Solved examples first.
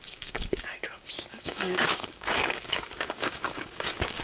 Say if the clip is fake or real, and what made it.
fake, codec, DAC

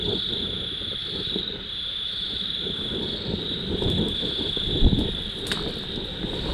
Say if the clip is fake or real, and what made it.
real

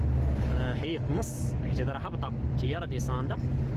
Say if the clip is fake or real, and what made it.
fake, codec, DAC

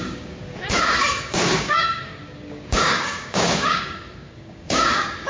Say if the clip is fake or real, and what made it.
fake, codec, DAC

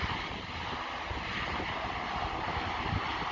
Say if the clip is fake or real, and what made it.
real